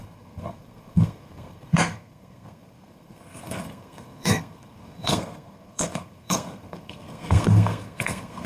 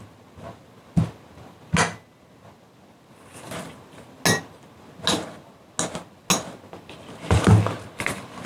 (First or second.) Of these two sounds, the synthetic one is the first